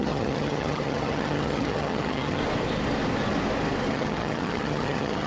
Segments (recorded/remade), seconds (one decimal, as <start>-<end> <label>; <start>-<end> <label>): 0.0-2.4 remade; 2.4-3.9 recorded; 3.9-5.3 remade